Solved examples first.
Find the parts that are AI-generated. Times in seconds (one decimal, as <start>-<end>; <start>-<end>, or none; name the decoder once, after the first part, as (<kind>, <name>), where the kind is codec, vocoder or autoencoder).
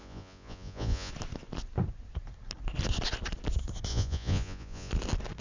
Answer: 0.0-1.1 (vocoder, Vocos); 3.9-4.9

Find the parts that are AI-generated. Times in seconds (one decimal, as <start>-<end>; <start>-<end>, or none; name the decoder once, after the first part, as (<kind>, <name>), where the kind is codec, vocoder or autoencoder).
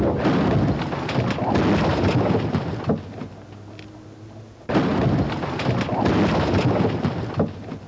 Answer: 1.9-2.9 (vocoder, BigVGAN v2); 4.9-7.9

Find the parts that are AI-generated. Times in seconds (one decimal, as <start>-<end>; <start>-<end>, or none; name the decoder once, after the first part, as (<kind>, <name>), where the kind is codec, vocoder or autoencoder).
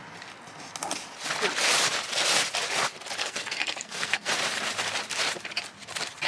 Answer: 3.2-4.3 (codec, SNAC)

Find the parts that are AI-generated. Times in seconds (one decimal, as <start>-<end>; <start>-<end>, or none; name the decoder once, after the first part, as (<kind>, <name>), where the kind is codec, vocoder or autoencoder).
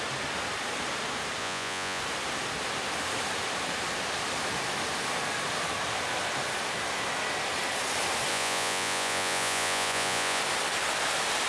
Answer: 1.4-2.0 (vocoder, Vocos); 8.3-10.4